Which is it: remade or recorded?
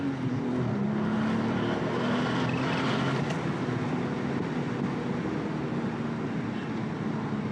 recorded